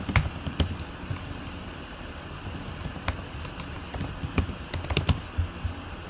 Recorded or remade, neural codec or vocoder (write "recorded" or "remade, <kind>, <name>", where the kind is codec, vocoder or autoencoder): recorded